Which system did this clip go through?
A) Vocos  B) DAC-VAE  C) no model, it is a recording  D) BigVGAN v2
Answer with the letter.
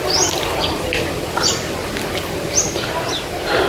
C